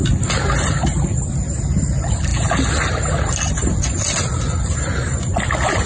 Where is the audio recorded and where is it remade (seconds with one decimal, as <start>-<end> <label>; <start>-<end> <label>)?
0.0-5.9 recorded